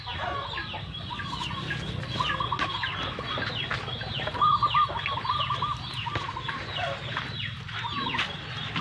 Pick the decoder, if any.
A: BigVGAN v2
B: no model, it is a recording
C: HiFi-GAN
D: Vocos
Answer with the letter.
B